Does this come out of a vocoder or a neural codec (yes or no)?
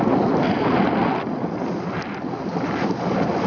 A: no